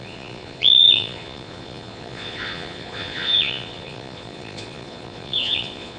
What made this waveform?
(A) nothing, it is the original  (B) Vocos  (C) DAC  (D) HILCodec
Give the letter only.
B